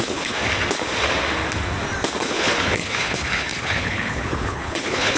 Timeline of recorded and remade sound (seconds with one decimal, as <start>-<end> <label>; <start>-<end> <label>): 0.0-0.4 remade; 0.4-2.2 recorded; 2.2-5.2 remade